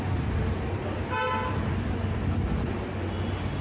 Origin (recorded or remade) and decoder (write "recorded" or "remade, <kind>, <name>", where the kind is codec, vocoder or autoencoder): recorded